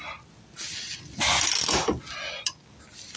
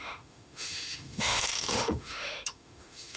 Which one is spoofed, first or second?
second